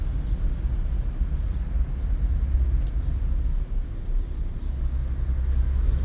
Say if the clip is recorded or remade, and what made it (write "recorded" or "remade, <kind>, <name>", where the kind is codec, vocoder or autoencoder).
recorded